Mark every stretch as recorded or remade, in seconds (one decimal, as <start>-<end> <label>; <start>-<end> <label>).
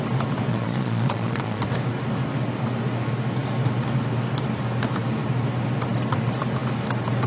0.0-0.5 recorded; 0.5-1.6 remade; 1.6-7.3 recorded